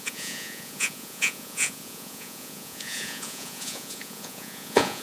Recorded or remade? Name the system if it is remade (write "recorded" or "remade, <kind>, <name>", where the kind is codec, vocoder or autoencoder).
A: remade, vocoder, Vocos